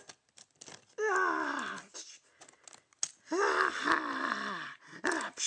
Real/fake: real